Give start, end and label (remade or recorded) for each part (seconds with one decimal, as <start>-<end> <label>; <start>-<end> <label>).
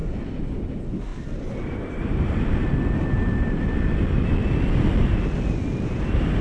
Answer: 0.0-6.4 recorded